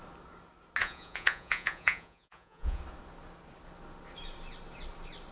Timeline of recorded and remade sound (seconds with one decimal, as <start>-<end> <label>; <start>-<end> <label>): 0.0-0.8 recorded; 0.8-2.8 remade; 2.8-5.3 recorded